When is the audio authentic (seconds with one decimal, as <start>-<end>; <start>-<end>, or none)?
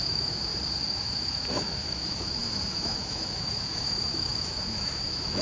0.5-1.0